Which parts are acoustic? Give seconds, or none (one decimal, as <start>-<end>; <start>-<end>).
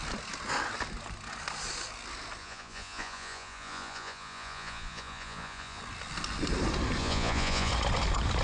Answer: 0.0-2.4; 5.8-7.0; 7.7-8.4